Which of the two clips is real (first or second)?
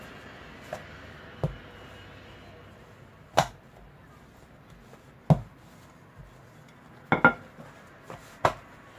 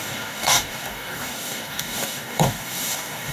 first